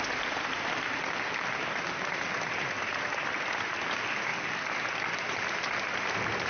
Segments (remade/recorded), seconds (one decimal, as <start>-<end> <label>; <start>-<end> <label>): 0.0-6.5 recorded